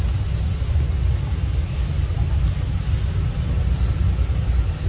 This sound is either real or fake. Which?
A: real